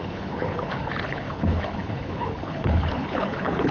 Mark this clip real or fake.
fake